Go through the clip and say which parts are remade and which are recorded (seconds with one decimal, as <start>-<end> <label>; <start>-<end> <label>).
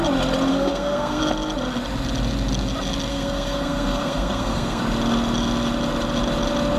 0.0-0.5 recorded; 0.5-1.2 remade; 1.2-3.1 recorded; 3.1-4.8 remade; 4.8-6.8 recorded